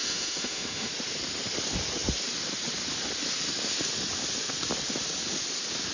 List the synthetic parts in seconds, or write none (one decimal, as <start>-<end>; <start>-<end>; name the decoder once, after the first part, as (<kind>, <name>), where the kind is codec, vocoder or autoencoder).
0.0-0.9 (autoencoder, DAC-VAE)